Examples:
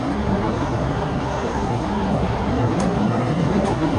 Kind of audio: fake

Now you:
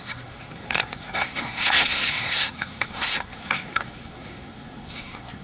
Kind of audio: fake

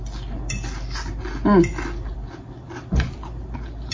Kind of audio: real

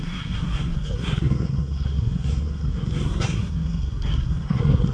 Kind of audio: fake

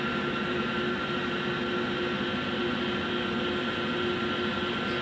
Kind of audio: real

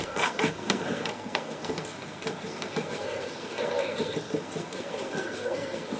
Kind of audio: fake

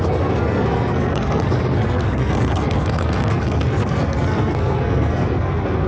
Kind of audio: fake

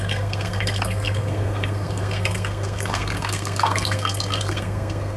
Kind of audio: fake